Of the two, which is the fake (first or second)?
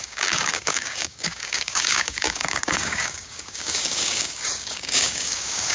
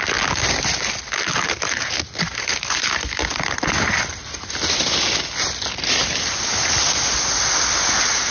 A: first